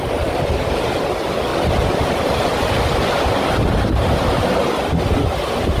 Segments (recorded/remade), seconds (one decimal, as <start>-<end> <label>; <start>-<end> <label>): 0.0-5.8 recorded